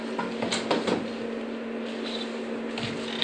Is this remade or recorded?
recorded